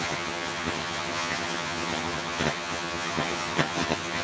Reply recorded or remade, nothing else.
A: remade